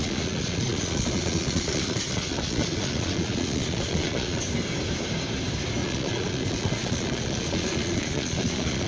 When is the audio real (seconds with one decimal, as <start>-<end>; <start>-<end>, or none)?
4.4-5.8